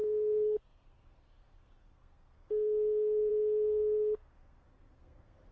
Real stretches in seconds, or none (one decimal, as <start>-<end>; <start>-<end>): none